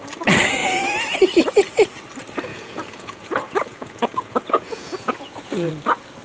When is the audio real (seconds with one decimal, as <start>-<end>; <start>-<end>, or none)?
0.0-0.6; 1.3-2.5; 5.7-6.2